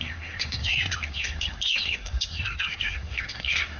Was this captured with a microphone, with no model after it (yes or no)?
no